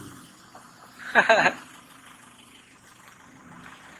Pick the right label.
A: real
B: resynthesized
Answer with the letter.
A